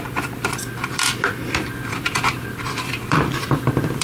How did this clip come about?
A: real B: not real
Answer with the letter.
B